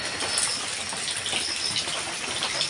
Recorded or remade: recorded